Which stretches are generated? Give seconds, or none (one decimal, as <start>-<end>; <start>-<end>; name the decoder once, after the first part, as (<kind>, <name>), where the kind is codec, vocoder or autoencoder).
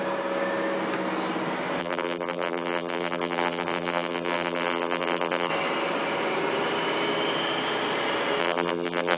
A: 1.8-5.5 (vocoder, BigVGAN v2); 8.4-9.2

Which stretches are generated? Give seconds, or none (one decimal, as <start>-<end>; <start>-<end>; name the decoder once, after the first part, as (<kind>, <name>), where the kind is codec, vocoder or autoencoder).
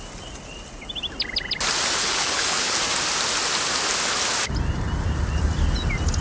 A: 2.0-2.8 (codec, HILCodec)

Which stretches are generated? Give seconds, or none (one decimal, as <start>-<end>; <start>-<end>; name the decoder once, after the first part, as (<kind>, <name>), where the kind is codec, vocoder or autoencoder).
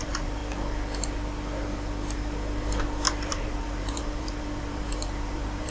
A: 0.0-0.4 (vocoder, BigVGAN v2); 3.3-5.7